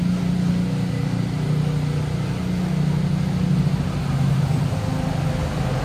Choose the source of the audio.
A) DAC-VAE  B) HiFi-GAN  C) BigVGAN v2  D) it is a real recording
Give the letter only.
D